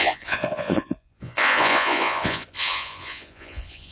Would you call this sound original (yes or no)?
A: no